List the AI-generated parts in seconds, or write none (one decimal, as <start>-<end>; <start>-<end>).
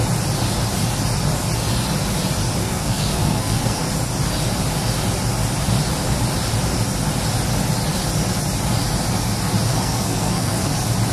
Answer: 2.6-3.8; 9.7-10.7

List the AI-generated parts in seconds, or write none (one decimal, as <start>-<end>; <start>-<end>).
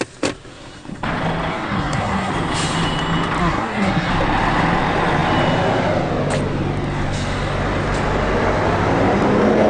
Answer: 0.5-1.1; 1.5-2.3; 3.4-4.1